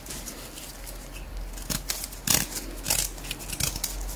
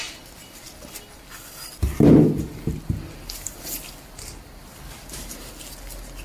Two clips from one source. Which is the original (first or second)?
first